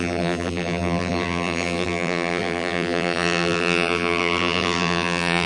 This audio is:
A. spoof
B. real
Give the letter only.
A